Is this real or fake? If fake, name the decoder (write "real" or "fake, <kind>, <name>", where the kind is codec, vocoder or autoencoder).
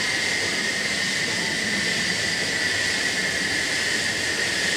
real